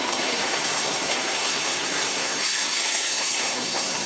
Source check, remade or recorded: remade